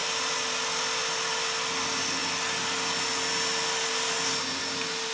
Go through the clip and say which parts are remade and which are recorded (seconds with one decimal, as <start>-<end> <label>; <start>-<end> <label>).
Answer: 0.0-5.1 recorded